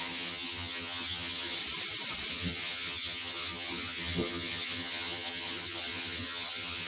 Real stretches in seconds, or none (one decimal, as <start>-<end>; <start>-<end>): 1.6-2.3